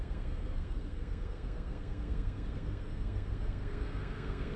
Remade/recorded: remade